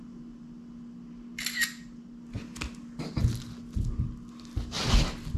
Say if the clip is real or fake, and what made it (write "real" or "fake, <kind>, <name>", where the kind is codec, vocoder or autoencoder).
real